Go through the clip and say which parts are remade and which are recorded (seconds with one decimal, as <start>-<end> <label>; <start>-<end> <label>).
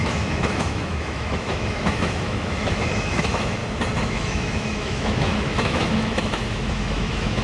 0.0-3.6 remade; 3.6-4.1 recorded; 4.1-7.4 remade